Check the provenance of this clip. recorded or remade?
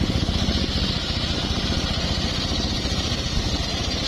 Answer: recorded